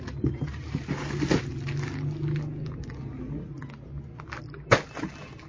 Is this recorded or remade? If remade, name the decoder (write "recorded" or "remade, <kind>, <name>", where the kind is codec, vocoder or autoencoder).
recorded